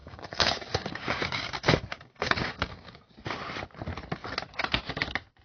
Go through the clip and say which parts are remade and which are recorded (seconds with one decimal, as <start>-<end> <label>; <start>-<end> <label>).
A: 0.0-3.0 remade; 3.0-5.4 recorded